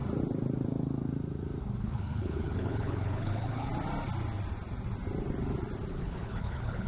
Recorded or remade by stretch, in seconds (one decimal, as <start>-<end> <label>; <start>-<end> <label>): 0.0-1.8 recorded; 1.8-3.7 remade; 3.7-5.9 recorded; 5.9-6.9 remade